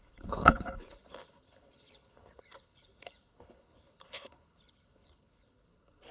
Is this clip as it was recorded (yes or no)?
no